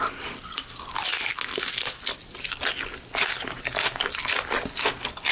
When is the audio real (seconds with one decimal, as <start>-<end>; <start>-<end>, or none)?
0.0-5.3